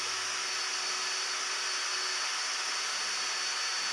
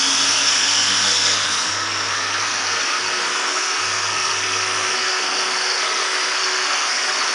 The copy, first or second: second